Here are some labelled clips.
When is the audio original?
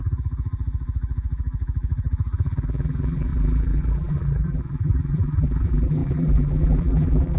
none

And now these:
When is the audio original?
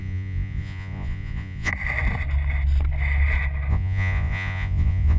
1.7-3.7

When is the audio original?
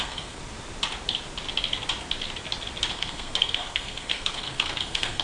0.4-2.9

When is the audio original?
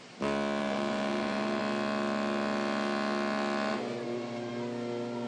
0.0-0.6; 1.6-3.7; 4.5-5.3